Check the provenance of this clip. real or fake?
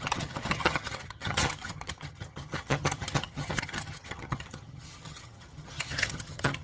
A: fake